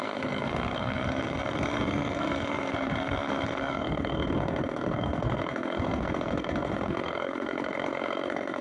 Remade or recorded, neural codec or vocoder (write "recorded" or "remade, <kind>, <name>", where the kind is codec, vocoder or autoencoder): remade, codec, SNAC